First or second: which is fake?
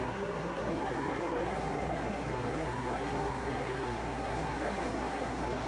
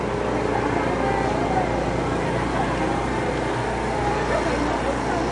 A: first